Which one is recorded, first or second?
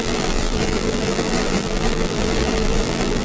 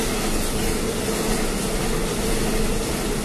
second